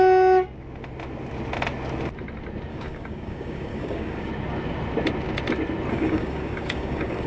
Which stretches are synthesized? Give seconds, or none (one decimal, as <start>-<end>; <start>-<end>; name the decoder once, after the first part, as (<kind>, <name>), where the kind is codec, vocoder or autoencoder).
2.7-4.3 (codec, DAC); 5.9-7.3